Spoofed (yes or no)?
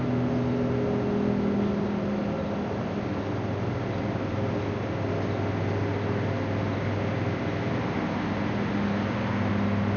no